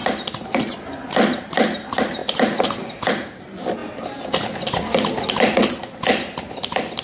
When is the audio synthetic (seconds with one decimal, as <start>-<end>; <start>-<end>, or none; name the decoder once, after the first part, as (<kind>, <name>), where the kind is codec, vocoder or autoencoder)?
0.0-2.2 (vocoder, BigVGAN v2); 3.1-3.8